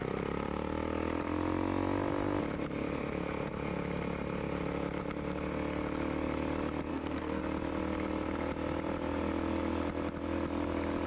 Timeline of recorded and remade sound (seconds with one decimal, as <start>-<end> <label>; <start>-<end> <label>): 0.0-6.9 recorded; 6.9-7.4 remade; 7.4-11.1 recorded